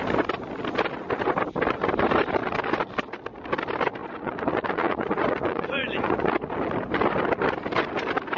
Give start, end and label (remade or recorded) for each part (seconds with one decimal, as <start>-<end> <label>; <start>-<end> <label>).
0.0-4.0 recorded; 4.0-6.3 remade; 6.3-8.4 recorded